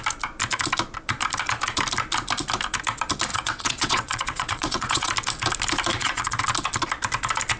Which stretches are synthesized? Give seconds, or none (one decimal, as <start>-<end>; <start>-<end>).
3.3-5.1; 5.9-6.4